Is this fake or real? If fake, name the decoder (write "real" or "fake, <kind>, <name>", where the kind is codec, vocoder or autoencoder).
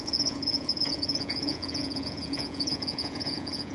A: fake, vocoder, Vocos